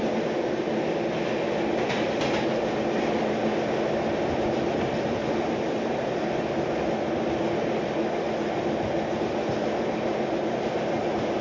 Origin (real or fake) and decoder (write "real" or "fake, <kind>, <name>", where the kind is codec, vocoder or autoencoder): real